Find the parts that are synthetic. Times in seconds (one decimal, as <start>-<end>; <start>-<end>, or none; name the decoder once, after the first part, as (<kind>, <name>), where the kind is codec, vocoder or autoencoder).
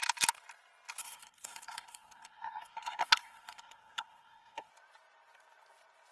1.0-4.7 (codec, SNAC)